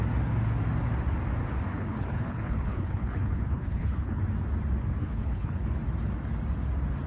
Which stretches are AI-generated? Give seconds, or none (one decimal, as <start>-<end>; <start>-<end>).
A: 1.7-4.2; 5.0-5.7